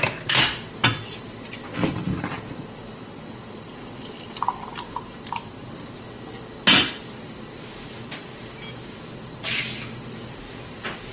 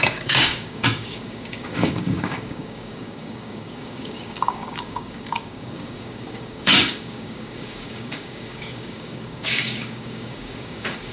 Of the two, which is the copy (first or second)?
second